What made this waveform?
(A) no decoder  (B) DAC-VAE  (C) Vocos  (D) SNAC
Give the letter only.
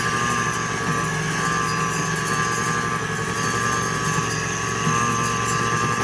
A